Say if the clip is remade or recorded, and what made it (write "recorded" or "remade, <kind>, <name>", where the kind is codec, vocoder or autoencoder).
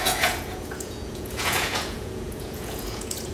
remade, vocoder, Vocos